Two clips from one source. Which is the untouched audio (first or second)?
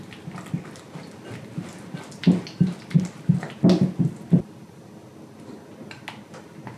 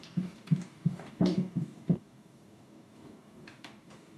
first